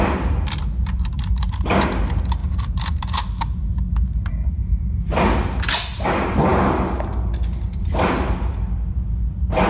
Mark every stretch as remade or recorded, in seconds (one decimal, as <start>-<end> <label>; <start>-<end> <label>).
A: 0.0-9.7 recorded